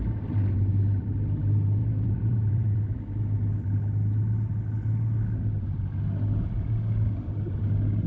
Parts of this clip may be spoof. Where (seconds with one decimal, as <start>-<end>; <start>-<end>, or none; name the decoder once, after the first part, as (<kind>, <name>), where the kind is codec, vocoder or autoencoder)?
1.8-3.0 (vocoder, Vocos)